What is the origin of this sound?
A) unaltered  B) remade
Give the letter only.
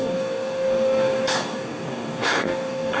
B